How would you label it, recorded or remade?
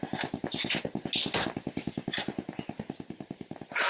recorded